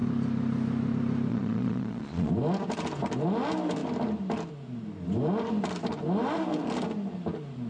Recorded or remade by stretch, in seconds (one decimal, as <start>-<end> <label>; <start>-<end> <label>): 0.0-1.3 recorded; 1.3-2.3 remade; 2.3-7.7 recorded